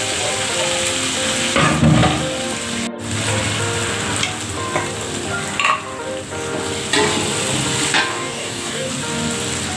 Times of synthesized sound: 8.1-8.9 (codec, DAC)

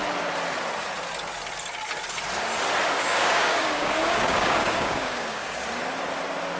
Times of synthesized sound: 3.0-5.6 (codec, DAC)